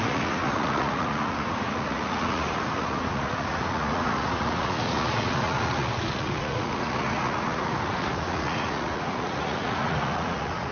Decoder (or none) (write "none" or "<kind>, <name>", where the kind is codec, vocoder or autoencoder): vocoder, Vocos